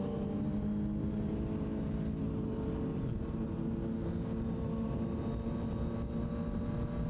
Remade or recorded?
recorded